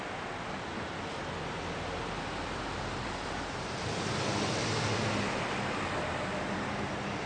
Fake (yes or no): no